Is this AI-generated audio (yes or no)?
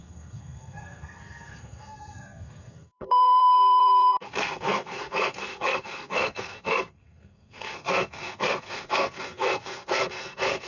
yes